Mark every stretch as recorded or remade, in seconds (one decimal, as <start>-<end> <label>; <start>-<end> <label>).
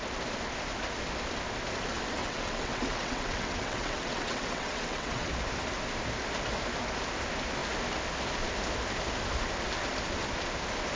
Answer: 0.0-2.2 recorded; 2.2-5.3 remade; 5.3-11.0 recorded